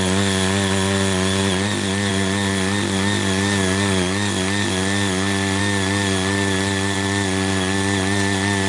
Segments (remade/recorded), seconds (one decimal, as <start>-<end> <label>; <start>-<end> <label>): 0.0-8.7 recorded